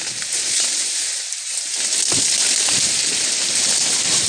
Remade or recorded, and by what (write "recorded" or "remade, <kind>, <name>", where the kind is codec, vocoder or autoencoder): recorded